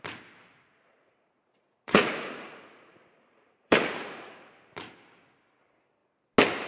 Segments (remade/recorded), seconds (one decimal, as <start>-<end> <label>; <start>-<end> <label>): 0.0-0.7 recorded; 0.7-4.5 remade; 4.5-6.7 recorded